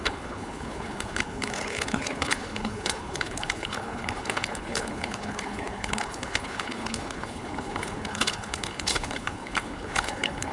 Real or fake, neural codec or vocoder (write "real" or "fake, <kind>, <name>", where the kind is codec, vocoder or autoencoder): fake, codec, HILCodec